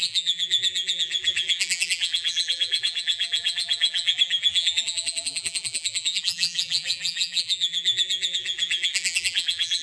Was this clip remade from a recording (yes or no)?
yes